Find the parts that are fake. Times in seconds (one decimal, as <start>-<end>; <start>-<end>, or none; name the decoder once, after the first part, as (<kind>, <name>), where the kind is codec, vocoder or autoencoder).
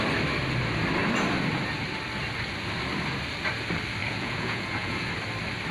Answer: 4.0-5.1 (vocoder, Vocos)